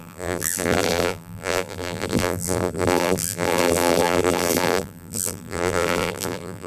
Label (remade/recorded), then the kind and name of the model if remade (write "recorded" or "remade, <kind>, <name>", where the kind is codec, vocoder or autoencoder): remade, vocoder, BigVGAN v2